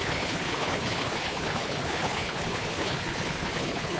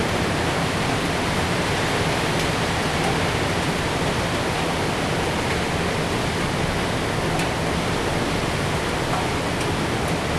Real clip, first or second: second